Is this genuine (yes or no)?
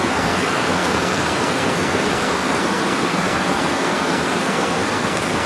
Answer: no